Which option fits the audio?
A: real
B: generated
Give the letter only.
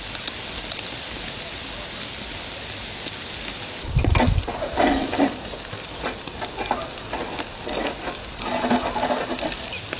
A